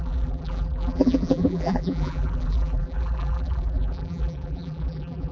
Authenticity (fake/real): fake